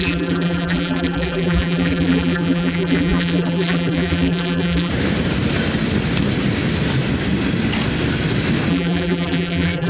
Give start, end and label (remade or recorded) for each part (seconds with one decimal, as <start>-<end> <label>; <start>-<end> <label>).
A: 0.0-4.9 remade; 4.9-8.7 recorded; 8.7-9.9 remade